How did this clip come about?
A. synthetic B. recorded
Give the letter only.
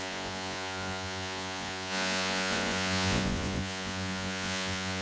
A